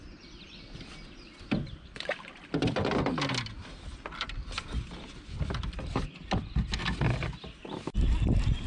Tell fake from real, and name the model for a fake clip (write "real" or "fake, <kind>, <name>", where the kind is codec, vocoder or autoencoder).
real